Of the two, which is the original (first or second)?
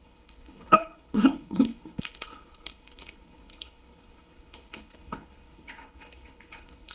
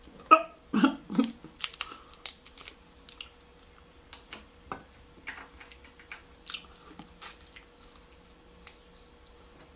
second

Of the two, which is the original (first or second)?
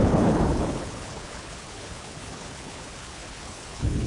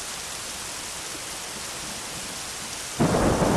second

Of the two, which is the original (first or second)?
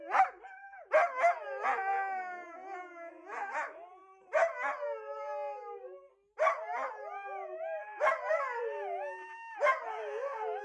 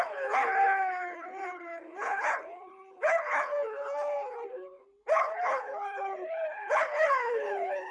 first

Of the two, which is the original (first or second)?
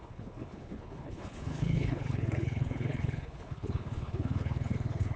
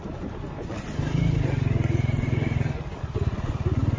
second